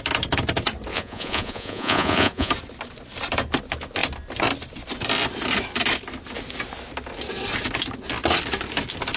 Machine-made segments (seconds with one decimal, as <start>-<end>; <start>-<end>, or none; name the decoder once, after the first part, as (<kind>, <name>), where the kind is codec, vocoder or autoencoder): 0.9-2.5 (vocoder, Vocos)